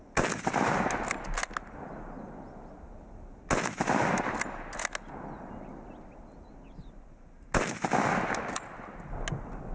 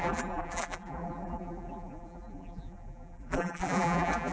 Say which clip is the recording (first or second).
first